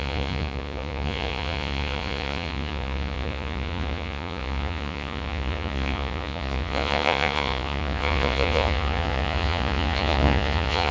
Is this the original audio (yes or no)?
no